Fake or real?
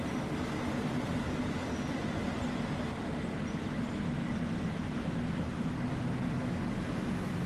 real